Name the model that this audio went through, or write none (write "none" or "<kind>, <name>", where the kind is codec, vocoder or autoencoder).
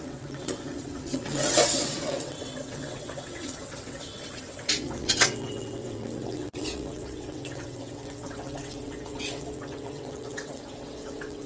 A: vocoder, WaveNeXt